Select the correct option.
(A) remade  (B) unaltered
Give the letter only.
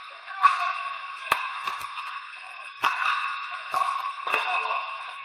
A